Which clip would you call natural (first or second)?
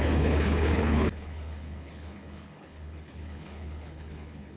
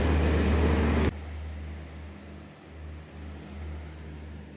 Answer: second